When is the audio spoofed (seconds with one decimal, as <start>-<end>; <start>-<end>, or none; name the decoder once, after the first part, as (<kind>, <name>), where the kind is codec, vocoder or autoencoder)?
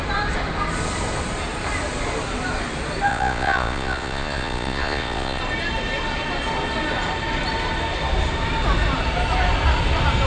3.1-5.4 (vocoder, Vocos)